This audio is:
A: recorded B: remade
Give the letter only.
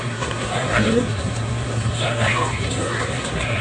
B